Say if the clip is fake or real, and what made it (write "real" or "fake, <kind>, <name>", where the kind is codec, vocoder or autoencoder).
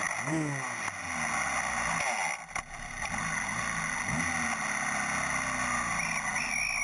real